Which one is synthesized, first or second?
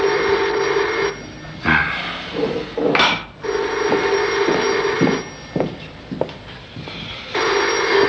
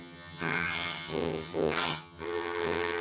second